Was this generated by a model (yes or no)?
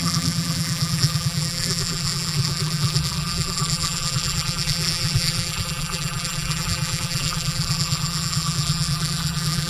yes